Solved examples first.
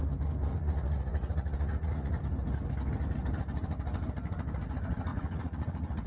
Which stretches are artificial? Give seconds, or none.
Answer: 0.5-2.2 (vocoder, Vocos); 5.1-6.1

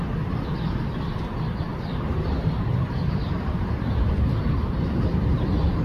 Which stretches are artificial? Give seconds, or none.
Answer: 1.7-4.8 (vocoder, BigVGAN v2)

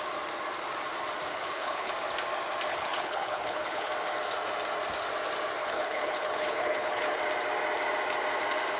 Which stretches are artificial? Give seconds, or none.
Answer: 1.3-1.9 (codec, HILCodec); 2.7-3.9; 5.6-7.2

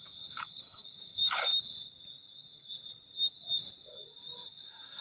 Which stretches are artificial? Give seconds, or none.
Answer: 0.0-1.5 (codec, DAC); 4.5-5.0

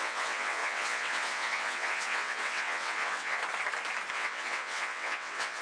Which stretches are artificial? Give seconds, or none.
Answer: 0.0-3.4 (vocoder, WaveNeXt); 4.1-5.6